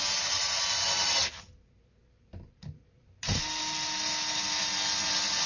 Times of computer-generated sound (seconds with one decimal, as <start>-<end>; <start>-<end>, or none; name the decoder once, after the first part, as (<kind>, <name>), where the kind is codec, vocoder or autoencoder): none